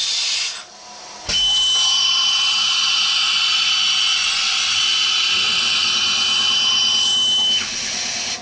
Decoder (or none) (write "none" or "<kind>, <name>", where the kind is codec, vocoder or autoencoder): none